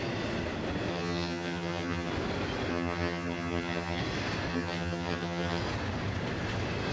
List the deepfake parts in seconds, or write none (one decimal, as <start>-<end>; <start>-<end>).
0.9-2.1; 2.7-4.0; 4.5-5.6